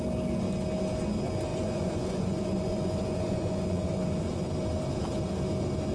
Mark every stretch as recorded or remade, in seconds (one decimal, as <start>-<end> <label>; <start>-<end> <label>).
0.0-1.5 recorded; 1.5-4.5 remade; 4.5-5.9 recorded